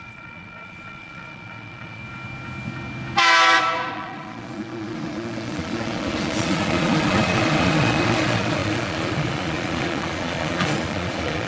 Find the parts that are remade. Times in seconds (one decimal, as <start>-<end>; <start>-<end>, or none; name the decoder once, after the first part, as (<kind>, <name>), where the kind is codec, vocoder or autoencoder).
0.0-2.0 (vocoder, Vocos); 3.9-11.5